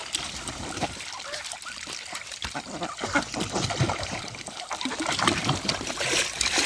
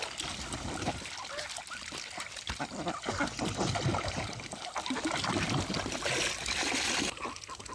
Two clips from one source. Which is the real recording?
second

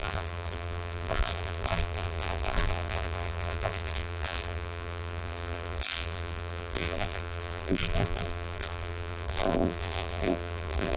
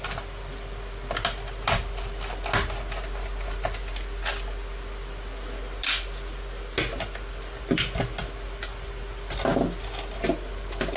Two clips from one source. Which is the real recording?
second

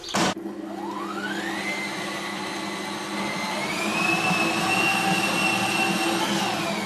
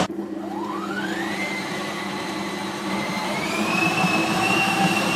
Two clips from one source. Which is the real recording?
first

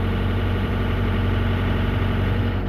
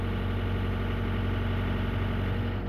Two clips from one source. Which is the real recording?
second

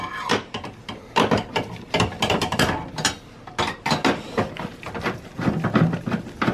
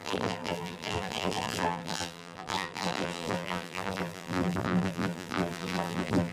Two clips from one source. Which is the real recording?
first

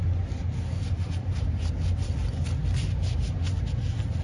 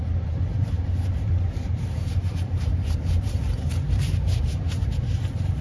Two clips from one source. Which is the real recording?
first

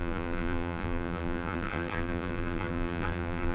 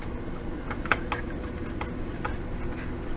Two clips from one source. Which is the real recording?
second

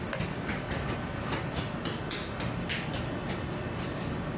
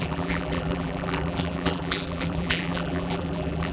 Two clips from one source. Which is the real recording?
first